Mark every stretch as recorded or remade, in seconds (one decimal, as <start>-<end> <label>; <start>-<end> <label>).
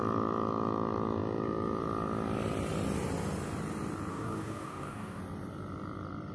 0.0-4.1 recorded; 4.1-5.2 remade; 5.2-6.3 recorded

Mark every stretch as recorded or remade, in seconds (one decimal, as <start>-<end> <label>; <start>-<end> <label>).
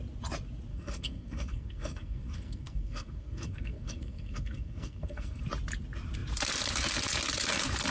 0.0-0.7 recorded; 0.7-5.4 remade; 5.4-7.9 recorded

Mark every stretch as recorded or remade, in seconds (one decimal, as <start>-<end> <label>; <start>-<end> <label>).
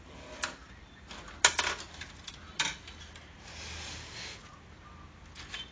0.0-0.6 recorded; 0.6-1.1 remade; 1.1-5.7 recorded